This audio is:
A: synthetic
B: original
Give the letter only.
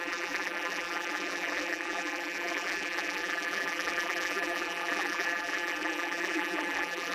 A